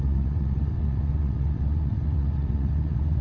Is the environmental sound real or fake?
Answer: fake